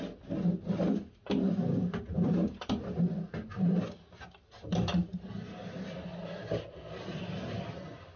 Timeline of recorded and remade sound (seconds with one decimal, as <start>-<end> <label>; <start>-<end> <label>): 0.0-8.2 recorded